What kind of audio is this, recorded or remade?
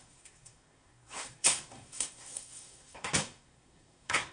remade